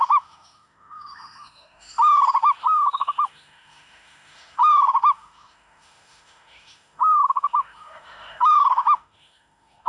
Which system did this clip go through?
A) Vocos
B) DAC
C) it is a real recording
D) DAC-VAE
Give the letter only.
D